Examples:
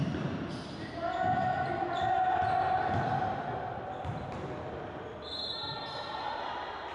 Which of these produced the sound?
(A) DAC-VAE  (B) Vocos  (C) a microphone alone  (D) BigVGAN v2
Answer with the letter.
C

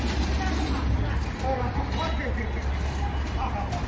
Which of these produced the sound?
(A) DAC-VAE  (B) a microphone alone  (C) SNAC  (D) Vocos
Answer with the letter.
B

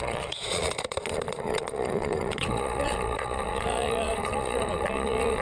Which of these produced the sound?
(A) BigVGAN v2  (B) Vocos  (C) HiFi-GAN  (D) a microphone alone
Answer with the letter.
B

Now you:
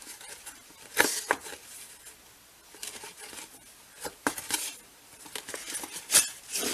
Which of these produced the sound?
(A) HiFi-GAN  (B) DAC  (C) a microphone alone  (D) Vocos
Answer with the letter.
C